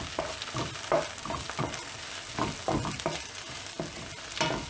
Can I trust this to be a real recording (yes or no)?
yes